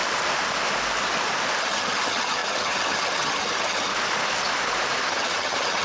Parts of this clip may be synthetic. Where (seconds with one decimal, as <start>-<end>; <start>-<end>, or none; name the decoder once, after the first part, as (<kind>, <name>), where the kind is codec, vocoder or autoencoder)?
1.6-3.9 (vocoder, HiFi-GAN); 5.1-5.8